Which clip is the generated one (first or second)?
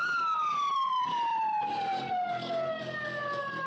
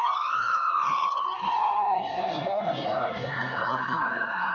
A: second